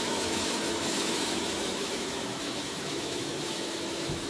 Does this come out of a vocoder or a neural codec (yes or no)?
yes